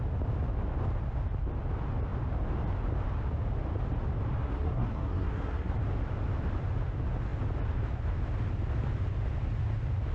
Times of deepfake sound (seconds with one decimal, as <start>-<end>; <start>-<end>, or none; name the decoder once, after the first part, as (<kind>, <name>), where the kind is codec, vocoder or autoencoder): 4.4-5.8 (codec, SNAC)

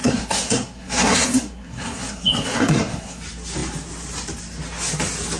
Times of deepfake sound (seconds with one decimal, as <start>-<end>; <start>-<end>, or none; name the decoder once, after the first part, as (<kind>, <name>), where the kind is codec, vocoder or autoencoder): 0.0-3.2 (codec, SNAC)

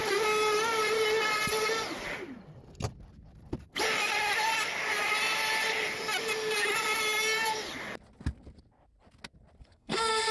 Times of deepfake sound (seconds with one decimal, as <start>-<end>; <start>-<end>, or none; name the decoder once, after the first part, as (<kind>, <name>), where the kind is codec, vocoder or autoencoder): 9.6-10.3 (codec, SNAC)

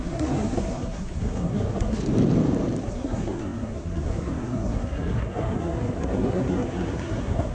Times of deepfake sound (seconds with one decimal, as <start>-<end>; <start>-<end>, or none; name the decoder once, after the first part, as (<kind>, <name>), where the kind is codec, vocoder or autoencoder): 0.0-2.0 (codec, SNAC); 2.8-7.5

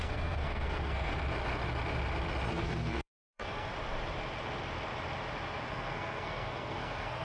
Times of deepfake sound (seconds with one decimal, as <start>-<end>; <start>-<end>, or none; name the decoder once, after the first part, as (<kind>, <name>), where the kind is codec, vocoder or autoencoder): 0.0-1.1 (codec, SNAC); 2.5-3.7; 5.7-7.2

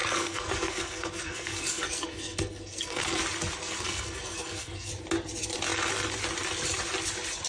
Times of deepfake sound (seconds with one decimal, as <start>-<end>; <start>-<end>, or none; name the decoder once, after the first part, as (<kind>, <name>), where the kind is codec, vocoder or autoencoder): 0.0-3.2 (codec, SNAC); 3.6-4.9